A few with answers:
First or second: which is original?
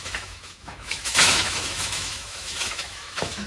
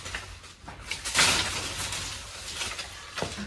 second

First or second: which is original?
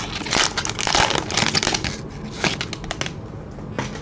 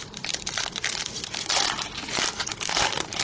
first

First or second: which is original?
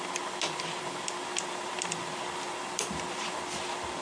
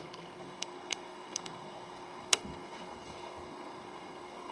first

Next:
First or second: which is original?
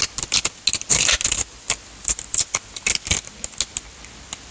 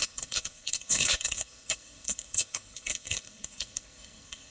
first